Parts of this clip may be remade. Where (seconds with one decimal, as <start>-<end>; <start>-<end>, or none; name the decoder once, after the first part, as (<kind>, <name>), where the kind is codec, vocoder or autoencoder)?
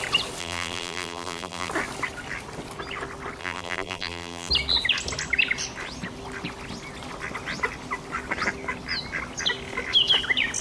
0.4-1.7 (vocoder, BigVGAN v2); 3.4-4.5